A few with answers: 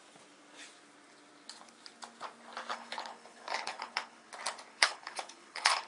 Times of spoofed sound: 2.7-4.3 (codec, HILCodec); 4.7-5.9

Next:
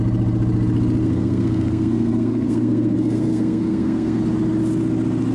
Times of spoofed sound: 1.0-4.2 (codec, SNAC)

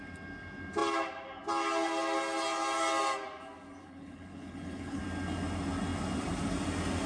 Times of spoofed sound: 3.8-5.0 (codec, HILCodec)

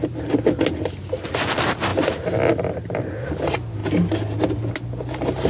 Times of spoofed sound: none

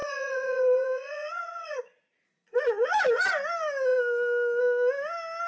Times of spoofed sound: 0.0-3.3 (vocoder, Vocos)